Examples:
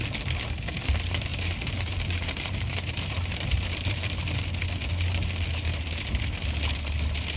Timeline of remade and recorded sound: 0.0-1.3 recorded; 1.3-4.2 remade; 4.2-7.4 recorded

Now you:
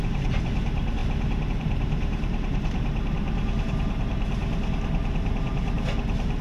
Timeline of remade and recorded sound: 0.0-1.0 remade; 1.0-1.5 recorded; 1.5-6.4 remade

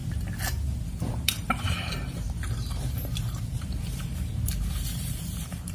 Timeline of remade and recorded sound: 0.0-0.8 recorded; 0.8-5.7 remade

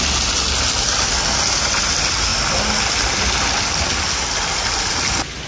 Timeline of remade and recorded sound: 0.0-5.5 recorded

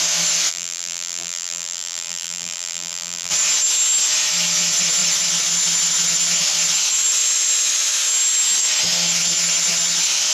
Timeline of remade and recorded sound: 0.0-0.5 recorded; 0.5-3.3 remade; 3.3-10.3 recorded

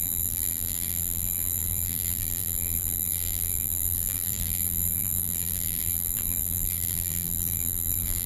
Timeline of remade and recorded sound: 0.0-8.3 remade